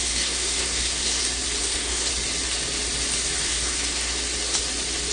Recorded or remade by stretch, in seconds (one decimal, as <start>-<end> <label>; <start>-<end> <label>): 0.0-1.2 remade; 1.2-1.6 recorded; 1.6-2.1 remade; 2.1-3.5 recorded; 3.5-4.2 remade; 4.2-5.1 recorded